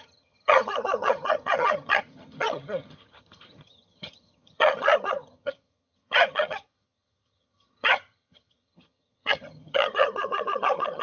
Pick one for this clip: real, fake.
fake